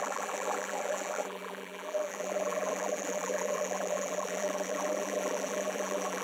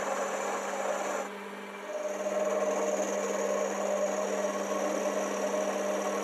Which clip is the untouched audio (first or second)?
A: second